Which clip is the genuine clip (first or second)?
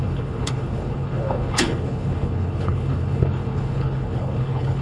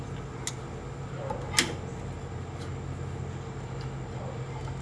second